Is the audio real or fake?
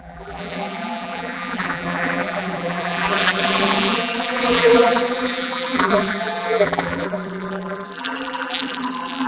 fake